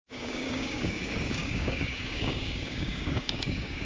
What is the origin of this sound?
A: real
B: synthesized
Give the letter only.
B